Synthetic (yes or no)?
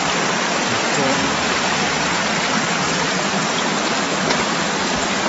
yes